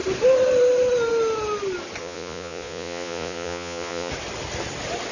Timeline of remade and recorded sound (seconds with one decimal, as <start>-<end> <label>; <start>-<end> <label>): 0.0-2.0 recorded; 2.0-4.1 remade; 4.1-5.1 recorded